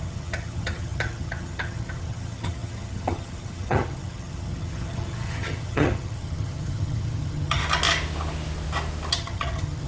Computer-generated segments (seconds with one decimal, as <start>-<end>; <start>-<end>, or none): 0.0-7.6; 9.1-9.9